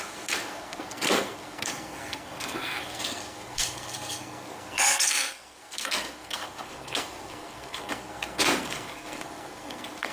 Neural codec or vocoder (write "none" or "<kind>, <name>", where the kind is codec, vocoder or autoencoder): codec, SNAC